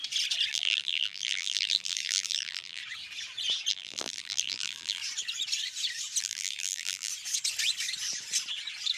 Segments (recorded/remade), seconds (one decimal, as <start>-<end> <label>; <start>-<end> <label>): 0.0-0.5 recorded; 0.5-2.8 remade; 2.8-3.7 recorded; 3.7-5.0 remade; 5.0-6.2 recorded; 6.2-7.1 remade; 7.1-9.0 recorded